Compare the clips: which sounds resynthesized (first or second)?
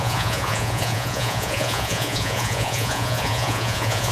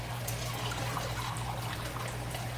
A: first